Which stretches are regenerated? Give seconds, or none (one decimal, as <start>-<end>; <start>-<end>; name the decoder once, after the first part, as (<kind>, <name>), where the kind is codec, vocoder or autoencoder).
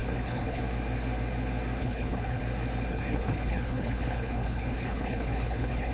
0.0-0.6 (codec, HILCodec); 1.8-2.4; 2.9-5.9